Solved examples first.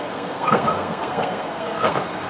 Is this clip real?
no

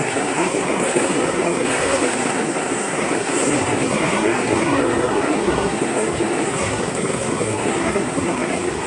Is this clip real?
no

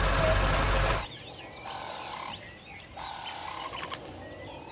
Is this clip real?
yes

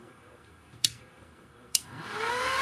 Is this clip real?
no